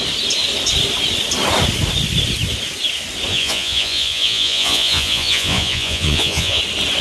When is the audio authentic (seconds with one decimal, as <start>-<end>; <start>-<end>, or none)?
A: 0.0-3.3; 6.6-7.0